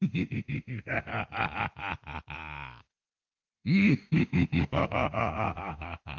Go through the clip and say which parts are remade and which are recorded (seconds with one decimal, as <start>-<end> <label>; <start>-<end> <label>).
0.0-1.1 remade; 1.1-2.8 recorded; 2.8-6.2 remade